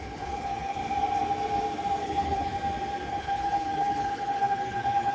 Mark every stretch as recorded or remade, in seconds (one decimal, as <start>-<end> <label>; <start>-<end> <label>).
0.0-0.8 remade; 0.8-2.0 recorded; 2.0-2.5 remade; 2.5-3.1 recorded; 3.1-5.1 remade